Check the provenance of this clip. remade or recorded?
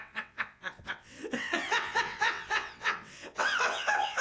remade